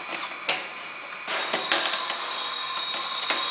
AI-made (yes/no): no